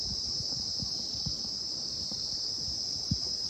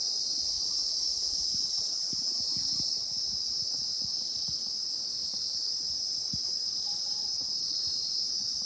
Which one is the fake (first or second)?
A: second